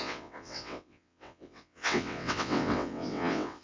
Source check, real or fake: fake